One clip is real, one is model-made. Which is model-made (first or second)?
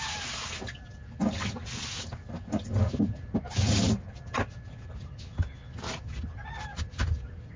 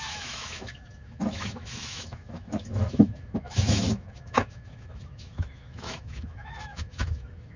second